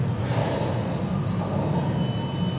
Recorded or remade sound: recorded